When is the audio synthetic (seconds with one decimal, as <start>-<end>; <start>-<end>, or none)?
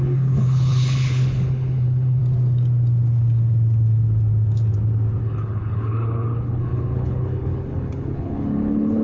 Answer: 0.0-2.2; 5.2-9.0